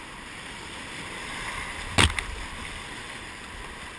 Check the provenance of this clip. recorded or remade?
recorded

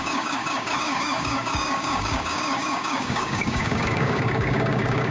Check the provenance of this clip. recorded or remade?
remade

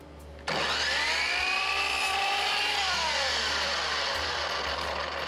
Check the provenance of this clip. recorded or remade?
recorded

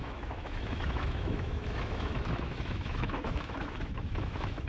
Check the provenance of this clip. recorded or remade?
remade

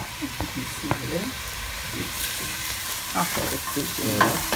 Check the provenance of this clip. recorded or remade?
remade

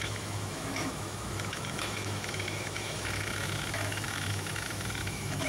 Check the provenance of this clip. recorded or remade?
remade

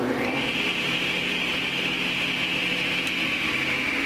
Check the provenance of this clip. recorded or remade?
recorded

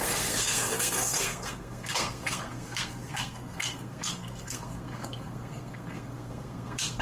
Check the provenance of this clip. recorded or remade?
remade